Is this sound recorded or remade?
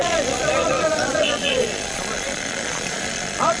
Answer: remade